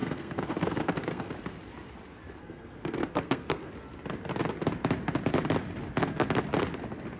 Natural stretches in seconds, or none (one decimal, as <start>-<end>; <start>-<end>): 1.3-2.4; 3.7-7.2